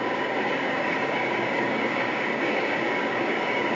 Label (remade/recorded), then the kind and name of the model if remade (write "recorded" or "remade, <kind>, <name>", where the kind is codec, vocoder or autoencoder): remade, codec, DAC